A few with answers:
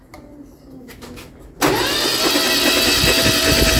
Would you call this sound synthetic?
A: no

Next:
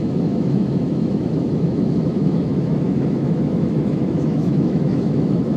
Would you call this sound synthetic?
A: yes